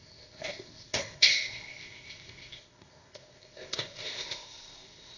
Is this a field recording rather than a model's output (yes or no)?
no